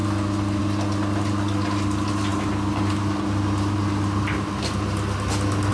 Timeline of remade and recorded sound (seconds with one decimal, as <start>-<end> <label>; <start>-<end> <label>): 0.0-5.7 recorded